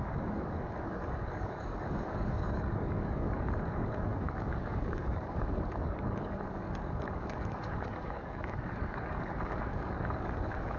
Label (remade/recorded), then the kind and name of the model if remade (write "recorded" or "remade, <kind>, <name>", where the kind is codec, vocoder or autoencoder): remade, codec, DAC